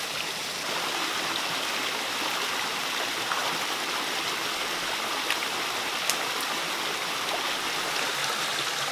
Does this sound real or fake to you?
real